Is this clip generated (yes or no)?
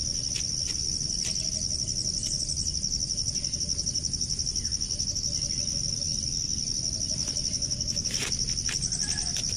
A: no